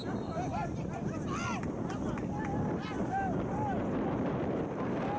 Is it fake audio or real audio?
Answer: real